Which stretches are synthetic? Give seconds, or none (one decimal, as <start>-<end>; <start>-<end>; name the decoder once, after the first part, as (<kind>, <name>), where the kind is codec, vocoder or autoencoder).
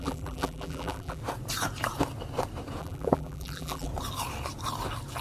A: 0.0-1.2 (vocoder, BigVGAN v2); 2.8-3.9